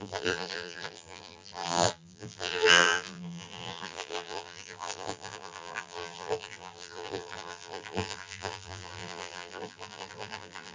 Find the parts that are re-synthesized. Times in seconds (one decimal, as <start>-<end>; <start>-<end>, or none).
0.0-10.7